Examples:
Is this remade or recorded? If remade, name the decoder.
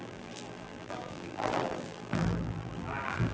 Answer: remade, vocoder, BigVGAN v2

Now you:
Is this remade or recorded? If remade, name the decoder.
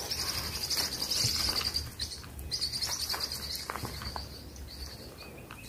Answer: recorded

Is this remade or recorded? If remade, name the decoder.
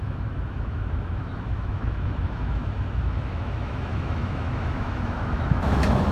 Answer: remade, autoencoder, DAC-VAE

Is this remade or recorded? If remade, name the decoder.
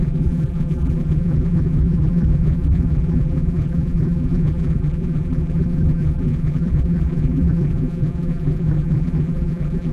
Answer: remade, vocoder, BigVGAN v2